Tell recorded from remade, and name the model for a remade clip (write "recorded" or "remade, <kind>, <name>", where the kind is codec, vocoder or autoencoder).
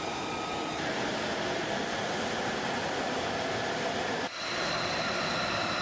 recorded